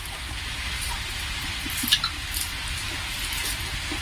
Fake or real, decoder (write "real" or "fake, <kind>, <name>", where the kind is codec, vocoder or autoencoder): real